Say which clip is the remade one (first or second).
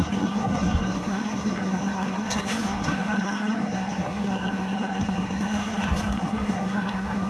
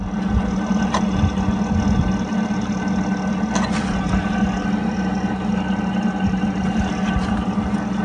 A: first